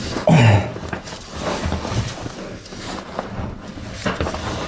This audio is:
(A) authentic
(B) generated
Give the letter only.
A